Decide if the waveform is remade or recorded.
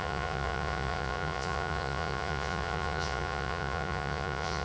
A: remade